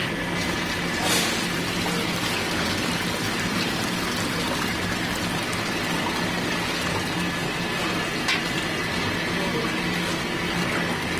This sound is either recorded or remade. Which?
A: recorded